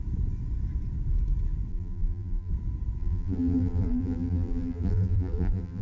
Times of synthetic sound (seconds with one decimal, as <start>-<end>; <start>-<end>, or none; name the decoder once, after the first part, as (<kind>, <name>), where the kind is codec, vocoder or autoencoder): 1.7-2.5 (vocoder, BigVGAN v2); 3.0-5.8